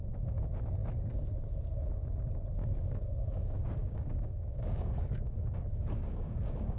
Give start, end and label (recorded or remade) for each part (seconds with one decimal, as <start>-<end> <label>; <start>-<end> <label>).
0.0-2.6 recorded; 2.6-6.8 remade